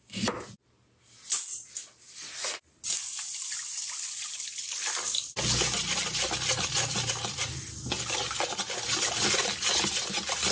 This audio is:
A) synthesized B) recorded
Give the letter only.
B